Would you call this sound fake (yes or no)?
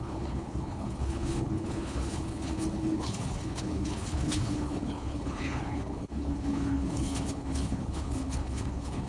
yes